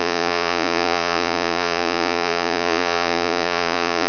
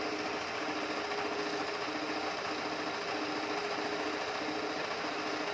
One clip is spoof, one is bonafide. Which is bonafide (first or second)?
second